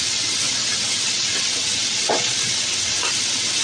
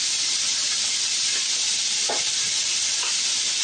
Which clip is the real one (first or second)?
second